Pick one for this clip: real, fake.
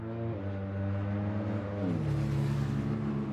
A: real